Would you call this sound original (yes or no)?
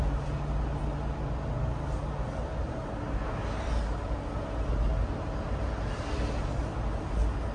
yes